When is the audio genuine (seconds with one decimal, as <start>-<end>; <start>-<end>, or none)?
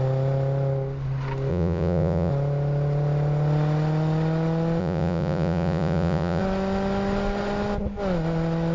0.0-1.5; 2.3-4.8; 6.4-8.7